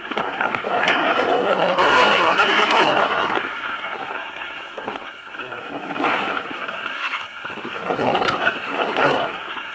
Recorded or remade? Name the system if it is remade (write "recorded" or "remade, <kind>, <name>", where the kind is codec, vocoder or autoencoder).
remade, codec, SNAC